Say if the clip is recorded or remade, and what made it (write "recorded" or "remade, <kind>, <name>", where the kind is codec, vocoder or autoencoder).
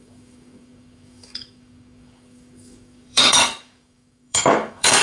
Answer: remade, codec, DAC